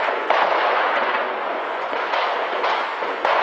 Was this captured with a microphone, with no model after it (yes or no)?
no